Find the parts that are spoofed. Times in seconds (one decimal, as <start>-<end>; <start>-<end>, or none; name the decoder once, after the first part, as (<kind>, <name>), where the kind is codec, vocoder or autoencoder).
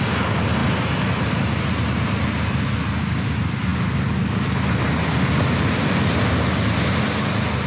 none